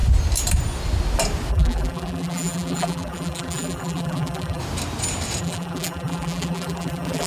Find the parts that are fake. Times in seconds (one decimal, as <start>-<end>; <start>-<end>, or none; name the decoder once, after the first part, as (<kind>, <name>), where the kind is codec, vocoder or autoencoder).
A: 1.5-4.6 (vocoder, BigVGAN v2); 5.4-7.3

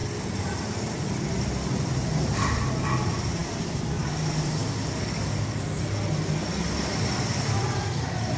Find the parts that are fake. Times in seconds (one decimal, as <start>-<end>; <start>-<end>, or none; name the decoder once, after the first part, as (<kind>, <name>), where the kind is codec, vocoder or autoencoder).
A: none

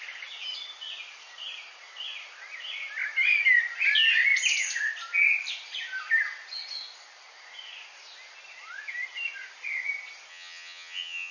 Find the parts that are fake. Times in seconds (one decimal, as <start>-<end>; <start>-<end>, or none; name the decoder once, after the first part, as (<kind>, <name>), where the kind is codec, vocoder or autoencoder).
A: 10.3-11.3 (vocoder, HiFi-GAN)

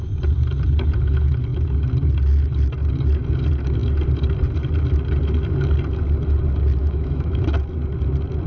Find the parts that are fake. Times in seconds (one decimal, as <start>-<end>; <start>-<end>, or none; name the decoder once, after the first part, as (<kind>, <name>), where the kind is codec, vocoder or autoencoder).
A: 6.8-7.4 (autoencoder, DAC-VAE)

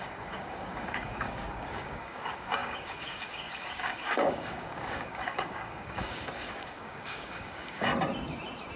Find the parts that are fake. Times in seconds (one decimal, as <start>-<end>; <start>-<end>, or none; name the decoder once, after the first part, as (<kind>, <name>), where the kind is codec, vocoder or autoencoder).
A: 0.0-7.9 (codec, DAC)

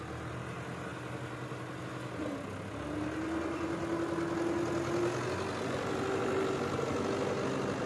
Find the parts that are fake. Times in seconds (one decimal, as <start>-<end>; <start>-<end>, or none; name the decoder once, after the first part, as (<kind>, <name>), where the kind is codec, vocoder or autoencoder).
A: none

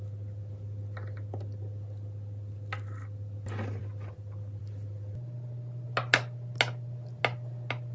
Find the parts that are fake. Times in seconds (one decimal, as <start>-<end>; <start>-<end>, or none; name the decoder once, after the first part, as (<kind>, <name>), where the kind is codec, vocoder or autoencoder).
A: none